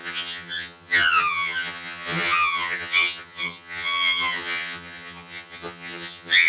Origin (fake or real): fake